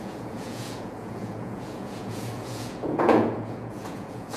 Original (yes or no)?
no